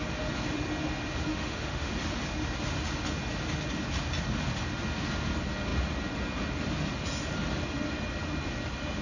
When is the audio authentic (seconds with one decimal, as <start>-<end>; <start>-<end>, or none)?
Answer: 0.0-1.3; 1.9-9.0